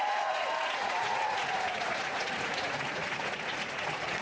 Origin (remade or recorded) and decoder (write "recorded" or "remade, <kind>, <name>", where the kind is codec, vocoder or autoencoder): remade, vocoder, Vocos